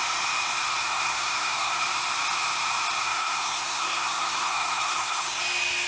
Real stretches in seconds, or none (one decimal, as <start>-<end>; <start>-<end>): 0.0-0.8; 1.8-3.0; 5.4-5.9